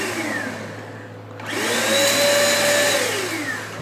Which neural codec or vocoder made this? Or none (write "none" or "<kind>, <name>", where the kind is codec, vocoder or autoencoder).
none